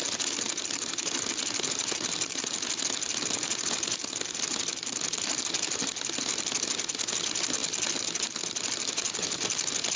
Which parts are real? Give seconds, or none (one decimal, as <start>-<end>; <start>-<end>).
0.0-10.0